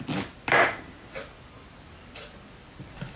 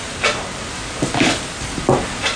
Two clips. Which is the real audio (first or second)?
second